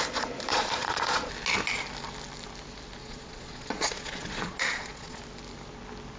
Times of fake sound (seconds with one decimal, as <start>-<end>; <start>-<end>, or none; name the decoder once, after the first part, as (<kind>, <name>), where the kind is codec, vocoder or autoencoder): 0.5-1.3 (vocoder, Vocos); 3.0-5.2